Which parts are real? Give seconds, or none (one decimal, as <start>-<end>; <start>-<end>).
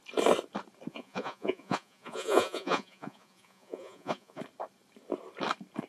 0.0-0.9; 4.4-5.9